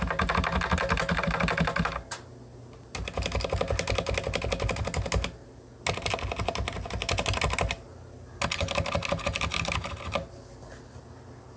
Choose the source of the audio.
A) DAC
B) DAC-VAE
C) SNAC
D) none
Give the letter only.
D